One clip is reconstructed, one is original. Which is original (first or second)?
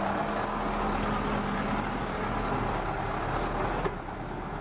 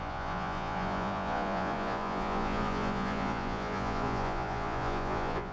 first